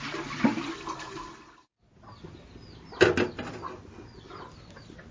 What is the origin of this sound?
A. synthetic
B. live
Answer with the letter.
B